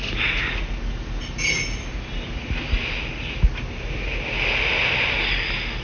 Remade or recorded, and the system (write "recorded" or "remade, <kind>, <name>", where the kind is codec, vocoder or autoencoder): recorded